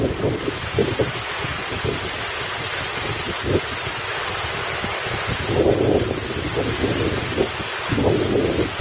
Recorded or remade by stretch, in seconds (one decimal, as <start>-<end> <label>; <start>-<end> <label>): 0.0-0.8 recorded; 0.8-1.6 remade; 1.6-4.1 recorded; 4.1-7.2 remade; 7.2-8.8 recorded